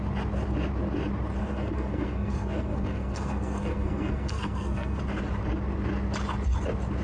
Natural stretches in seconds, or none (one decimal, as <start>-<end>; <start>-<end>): 0.0-1.4; 5.0-7.0